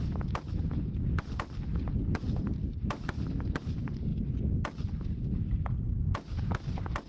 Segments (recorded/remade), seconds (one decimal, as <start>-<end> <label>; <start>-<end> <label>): 0.0-7.1 recorded